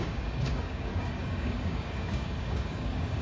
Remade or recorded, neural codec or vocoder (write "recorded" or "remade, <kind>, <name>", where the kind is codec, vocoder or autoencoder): remade, codec, DAC